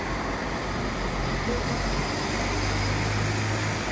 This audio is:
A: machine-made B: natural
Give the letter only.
B